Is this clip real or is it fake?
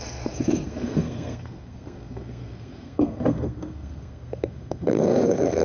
fake